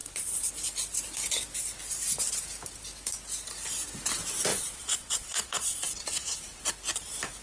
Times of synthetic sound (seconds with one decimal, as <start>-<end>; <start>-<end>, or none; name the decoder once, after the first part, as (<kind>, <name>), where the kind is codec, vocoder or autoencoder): 0.0-0.5 (vocoder, Vocos); 4.5-6.6